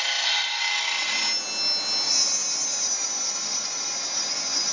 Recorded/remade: recorded